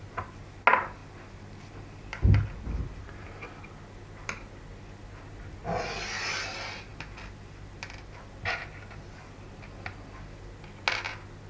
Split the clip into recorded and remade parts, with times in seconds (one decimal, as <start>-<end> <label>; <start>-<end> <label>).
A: 0.0-11.5 recorded